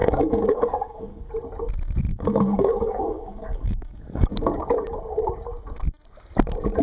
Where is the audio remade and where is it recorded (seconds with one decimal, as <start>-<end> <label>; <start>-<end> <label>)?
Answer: 0.0-1.3 remade; 1.3-2.1 recorded; 2.1-4.3 remade; 4.3-6.8 recorded